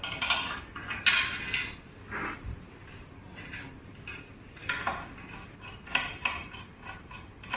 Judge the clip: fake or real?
real